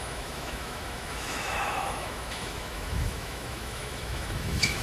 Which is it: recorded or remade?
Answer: remade